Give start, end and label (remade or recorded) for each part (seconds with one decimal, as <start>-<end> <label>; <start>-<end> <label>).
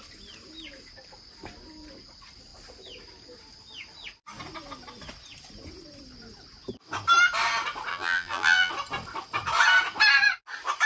0.0-7.9 recorded; 7.9-8.7 remade; 8.7-10.9 recorded